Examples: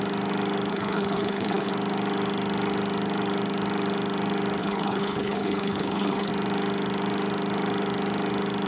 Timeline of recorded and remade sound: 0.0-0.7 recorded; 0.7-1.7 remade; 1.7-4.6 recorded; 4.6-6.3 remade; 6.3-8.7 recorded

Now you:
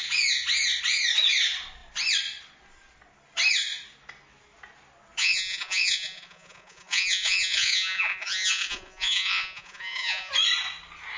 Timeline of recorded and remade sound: 0.0-5.2 recorded; 5.2-10.3 remade; 10.3-11.2 recorded

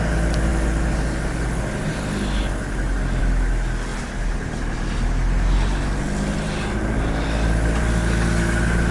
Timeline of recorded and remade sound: 0.0-8.9 recorded

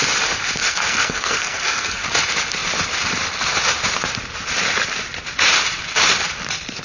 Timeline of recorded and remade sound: 0.0-0.6 recorded; 0.6-2.0 remade; 2.0-6.8 recorded

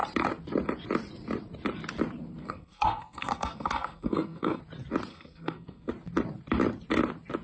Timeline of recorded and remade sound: 0.0-2.4 recorded; 2.4-4.6 remade; 4.6-5.1 recorded; 5.1-5.9 remade; 5.9-7.4 recorded

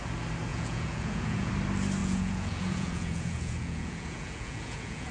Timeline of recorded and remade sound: 0.0-0.5 recorded; 0.5-1.5 remade; 1.5-2.0 recorded; 2.0-5.1 remade